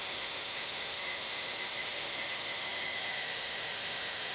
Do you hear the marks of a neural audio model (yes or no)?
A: yes